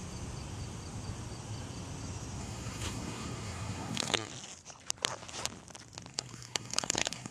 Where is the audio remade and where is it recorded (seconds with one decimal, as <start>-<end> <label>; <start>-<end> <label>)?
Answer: 0.0-2.4 recorded; 2.4-4.3 remade; 4.3-6.1 recorded; 6.1-7.3 remade